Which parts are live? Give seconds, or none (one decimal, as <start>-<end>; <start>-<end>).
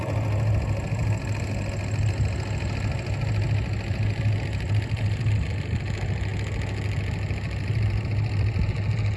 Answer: 0.0-9.2